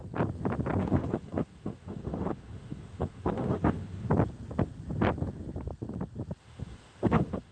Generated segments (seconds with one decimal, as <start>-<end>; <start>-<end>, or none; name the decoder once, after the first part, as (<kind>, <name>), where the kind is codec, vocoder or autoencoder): 0.8-4.1 (autoencoder, DAC-VAE); 6.4-7.5